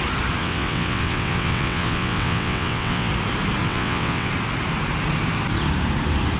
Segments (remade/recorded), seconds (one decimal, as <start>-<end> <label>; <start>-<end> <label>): 0.0-0.4 recorded; 0.4-3.1 remade; 3.1-3.6 recorded; 3.6-4.3 remade; 4.3-6.4 recorded